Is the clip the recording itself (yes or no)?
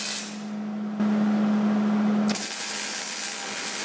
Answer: yes